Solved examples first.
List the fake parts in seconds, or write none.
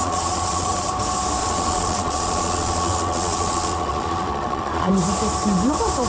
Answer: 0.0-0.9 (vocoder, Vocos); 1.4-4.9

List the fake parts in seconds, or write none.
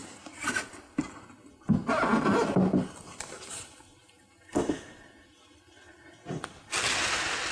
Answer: none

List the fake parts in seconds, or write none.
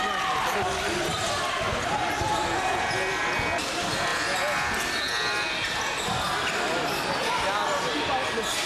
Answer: none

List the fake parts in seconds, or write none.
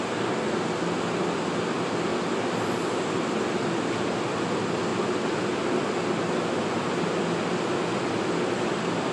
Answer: none